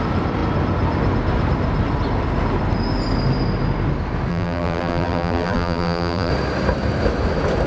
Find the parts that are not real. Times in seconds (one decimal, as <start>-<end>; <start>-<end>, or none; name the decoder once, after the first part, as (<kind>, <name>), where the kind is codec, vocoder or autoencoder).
4.3-6.3 (vocoder, BigVGAN v2)

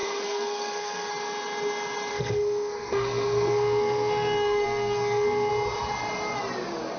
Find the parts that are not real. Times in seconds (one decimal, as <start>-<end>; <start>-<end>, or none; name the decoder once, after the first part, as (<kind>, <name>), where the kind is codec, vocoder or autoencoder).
0.0-1.1 (codec, SNAC); 2.1-5.5

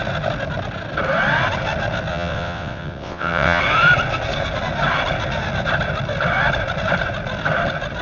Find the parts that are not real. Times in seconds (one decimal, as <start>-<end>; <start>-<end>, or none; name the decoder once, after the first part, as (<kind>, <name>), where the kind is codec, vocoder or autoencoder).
2.1-3.6 (vocoder, WaveNeXt)